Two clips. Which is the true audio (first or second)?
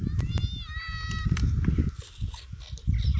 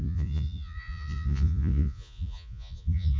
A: first